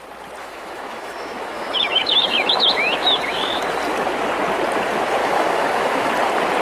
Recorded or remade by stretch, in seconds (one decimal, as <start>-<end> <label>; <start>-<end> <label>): 0.0-0.4 recorded; 0.4-3.6 remade; 3.6-5.2 recorded; 5.2-6.1 remade; 6.1-6.6 recorded